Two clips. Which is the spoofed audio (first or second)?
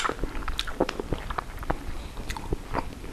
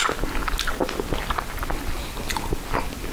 first